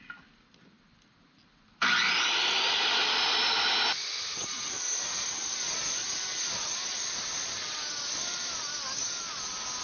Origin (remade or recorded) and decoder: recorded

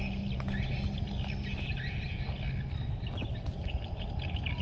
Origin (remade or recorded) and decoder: recorded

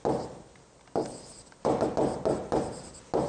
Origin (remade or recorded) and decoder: recorded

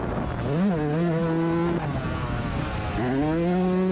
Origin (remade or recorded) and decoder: recorded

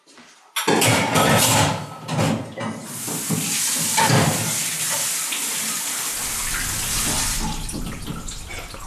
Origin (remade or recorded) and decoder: recorded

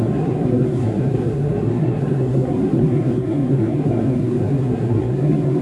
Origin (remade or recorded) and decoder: remade, codec, SNAC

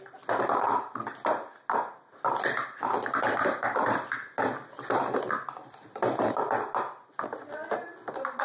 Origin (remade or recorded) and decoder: recorded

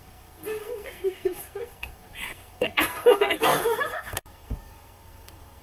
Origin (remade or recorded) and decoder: remade, codec, SNAC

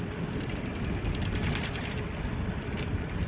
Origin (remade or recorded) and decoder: remade, vocoder, BigVGAN v2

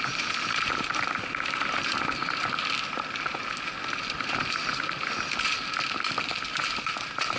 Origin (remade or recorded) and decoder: recorded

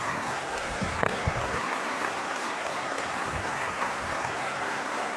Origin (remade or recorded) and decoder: remade, codec, SNAC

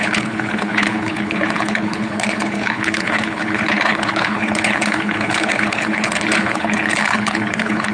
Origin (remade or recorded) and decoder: remade, codec, HILCodec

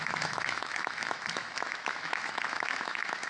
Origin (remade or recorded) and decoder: remade, autoencoder, DAC-VAE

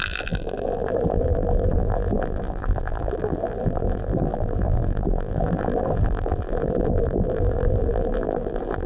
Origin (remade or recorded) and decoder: remade, vocoder, BigVGAN v2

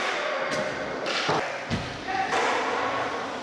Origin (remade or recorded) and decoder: recorded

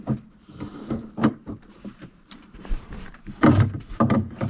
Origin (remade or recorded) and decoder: remade, vocoder, BigVGAN v2